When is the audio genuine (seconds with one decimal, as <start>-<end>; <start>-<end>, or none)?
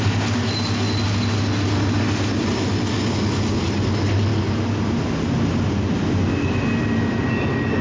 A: 0.0-7.8